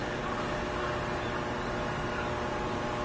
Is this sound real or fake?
real